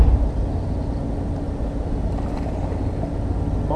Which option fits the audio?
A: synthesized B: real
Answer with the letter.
B